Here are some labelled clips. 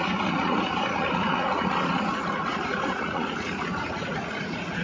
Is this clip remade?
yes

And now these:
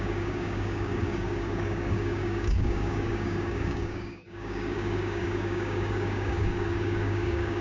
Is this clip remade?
yes